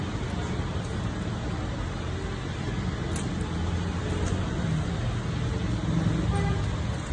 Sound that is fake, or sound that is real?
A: real